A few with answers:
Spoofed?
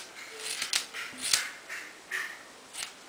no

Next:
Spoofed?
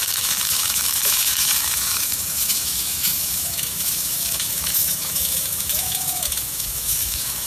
yes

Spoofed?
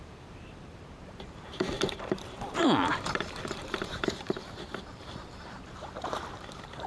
yes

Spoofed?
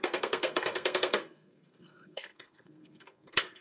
yes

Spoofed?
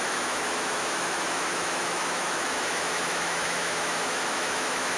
yes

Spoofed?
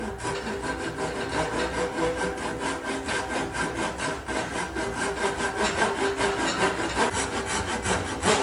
no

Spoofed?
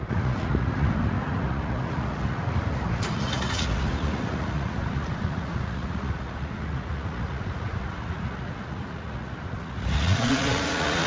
yes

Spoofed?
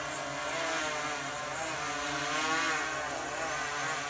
no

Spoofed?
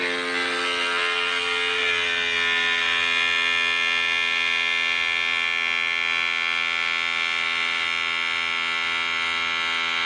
no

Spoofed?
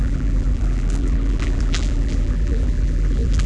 yes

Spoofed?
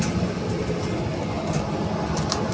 no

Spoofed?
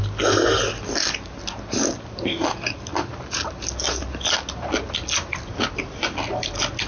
no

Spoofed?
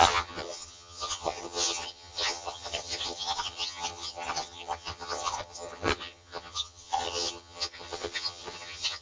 yes